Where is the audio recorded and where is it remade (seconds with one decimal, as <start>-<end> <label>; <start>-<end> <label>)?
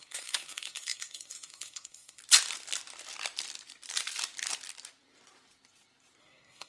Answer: 0.0-2.2 remade; 2.2-6.2 recorded; 6.2-6.7 remade